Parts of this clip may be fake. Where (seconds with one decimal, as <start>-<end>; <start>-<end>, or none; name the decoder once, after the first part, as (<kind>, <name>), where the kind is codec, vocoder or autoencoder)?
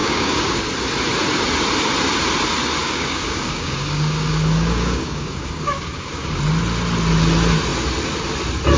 0.0-0.6 (codec, DAC); 2.8-6.4